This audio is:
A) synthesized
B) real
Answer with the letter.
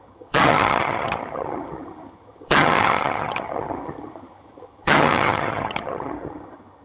A